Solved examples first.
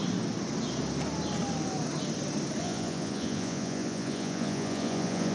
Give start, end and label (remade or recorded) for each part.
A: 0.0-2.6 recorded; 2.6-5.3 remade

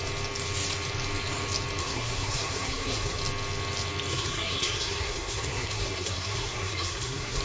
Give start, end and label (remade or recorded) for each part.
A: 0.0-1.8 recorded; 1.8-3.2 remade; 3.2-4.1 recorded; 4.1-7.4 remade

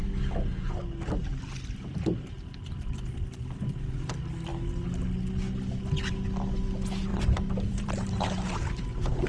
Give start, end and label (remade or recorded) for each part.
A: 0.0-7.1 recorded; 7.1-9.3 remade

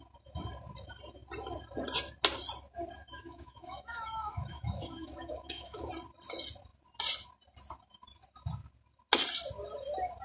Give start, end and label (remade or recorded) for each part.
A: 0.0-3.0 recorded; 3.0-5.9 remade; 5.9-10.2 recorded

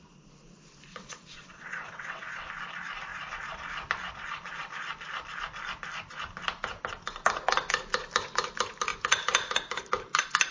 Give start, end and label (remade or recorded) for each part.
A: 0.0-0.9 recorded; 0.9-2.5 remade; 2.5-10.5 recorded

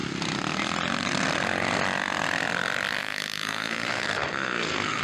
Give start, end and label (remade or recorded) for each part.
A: 0.0-3.0 recorded; 3.0-5.0 remade

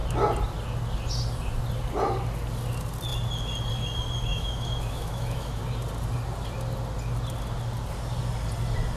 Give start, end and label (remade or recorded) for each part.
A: 0.0-4.3 recorded; 4.3-5.6 remade; 5.6-9.0 recorded